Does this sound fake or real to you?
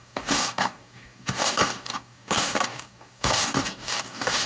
fake